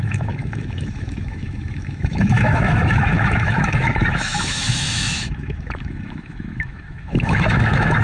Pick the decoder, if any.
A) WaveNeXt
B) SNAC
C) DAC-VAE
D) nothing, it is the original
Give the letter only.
C